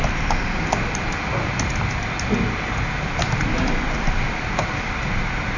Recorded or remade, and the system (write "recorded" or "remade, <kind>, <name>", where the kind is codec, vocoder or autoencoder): remade, vocoder, BigVGAN v2